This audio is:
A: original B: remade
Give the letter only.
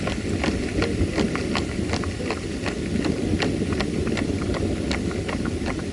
A